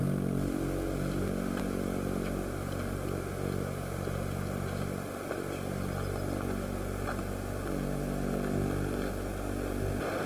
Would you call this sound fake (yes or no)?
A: no